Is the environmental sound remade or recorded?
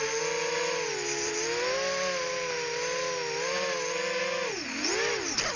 recorded